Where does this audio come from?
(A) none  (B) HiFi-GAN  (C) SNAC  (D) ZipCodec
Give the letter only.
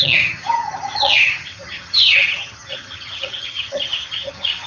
B